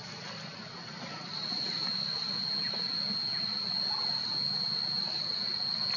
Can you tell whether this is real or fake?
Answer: real